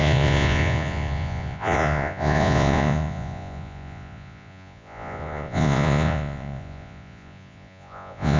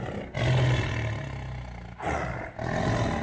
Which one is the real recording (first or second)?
second